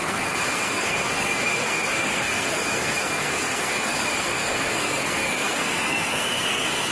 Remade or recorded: remade